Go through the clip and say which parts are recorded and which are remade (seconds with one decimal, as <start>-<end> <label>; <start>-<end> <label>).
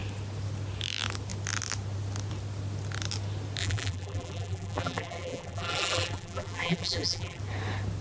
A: 0.0-3.6 recorded; 3.6-7.4 remade; 7.4-8.0 recorded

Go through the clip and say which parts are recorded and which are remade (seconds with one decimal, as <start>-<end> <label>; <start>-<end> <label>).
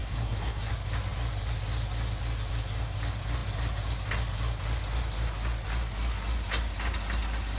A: 0.0-0.7 remade; 0.7-7.6 recorded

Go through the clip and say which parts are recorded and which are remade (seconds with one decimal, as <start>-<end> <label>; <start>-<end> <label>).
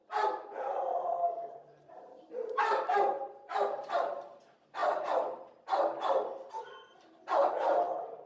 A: 0.0-3.9 remade; 3.9-7.4 recorded; 7.4-8.3 remade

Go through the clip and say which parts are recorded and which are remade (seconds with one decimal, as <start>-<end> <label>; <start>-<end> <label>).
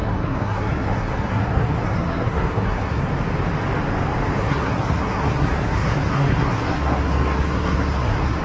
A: 0.0-3.1 remade; 3.1-4.4 recorded; 4.4-8.4 remade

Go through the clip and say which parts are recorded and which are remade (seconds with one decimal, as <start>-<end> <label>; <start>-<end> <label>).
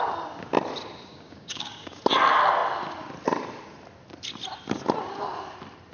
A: 0.0-1.1 recorded; 1.1-2.0 remade; 2.0-5.9 recorded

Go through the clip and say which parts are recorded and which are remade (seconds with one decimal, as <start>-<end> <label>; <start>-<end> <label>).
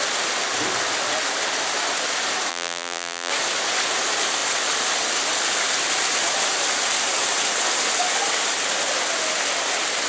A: 0.0-2.5 recorded; 2.5-3.3 remade; 3.3-10.1 recorded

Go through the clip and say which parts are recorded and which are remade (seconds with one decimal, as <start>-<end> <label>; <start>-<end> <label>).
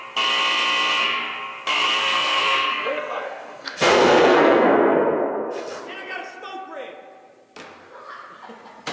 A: 0.0-2.0 recorded; 2.0-5.8 remade; 5.8-8.9 recorded